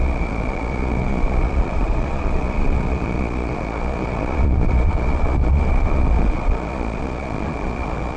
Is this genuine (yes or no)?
no